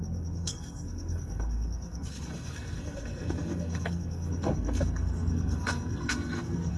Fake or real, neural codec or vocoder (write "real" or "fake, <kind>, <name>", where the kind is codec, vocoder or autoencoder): fake, codec, SNAC